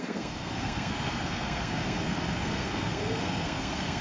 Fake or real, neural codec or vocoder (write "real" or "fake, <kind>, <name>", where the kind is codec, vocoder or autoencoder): fake, codec, SNAC